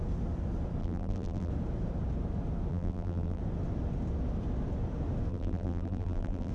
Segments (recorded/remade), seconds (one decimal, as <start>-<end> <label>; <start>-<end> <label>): 0.0-0.8 recorded; 0.8-1.5 remade; 1.5-2.7 recorded; 2.7-3.4 remade; 3.4-5.3 recorded; 5.3-6.5 remade